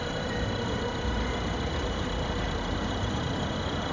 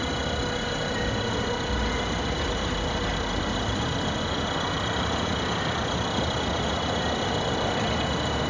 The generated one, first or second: first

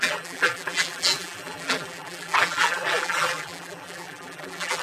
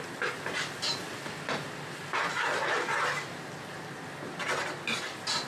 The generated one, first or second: first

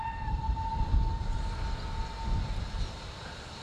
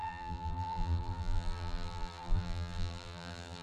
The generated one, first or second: second